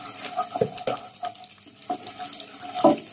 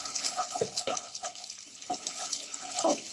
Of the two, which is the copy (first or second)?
second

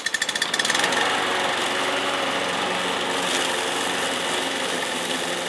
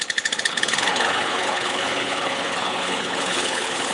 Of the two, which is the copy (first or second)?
second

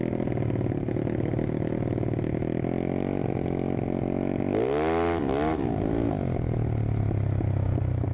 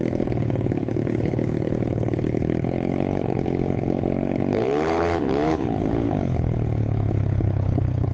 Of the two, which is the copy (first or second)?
second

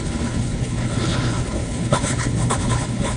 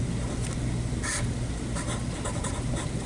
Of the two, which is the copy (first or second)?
first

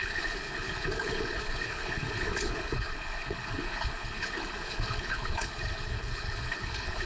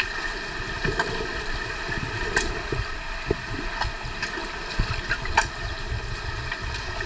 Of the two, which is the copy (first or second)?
first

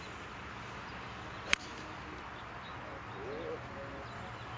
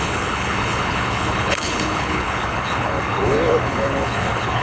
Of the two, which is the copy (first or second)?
second